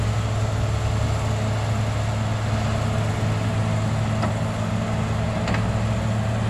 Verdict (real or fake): real